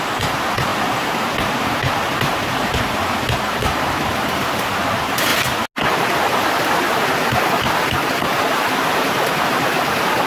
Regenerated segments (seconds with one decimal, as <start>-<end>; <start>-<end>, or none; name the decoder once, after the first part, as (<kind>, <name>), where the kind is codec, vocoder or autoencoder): 0.0-5.3 (vocoder, BigVGAN v2); 7.9-10.3